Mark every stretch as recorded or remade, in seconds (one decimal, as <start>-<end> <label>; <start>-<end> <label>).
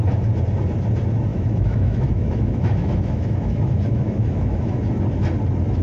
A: 0.0-1.3 recorded; 1.3-4.8 remade; 4.8-5.8 recorded